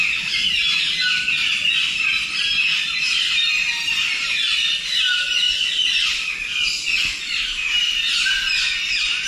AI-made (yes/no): no